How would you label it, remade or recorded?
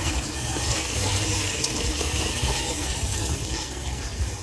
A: remade